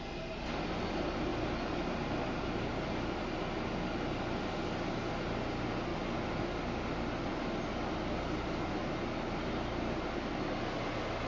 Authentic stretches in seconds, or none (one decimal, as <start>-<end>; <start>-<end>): 0.0-11.3